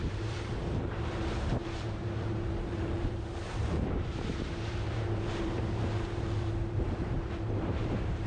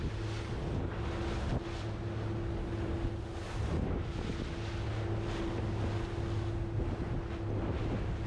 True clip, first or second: second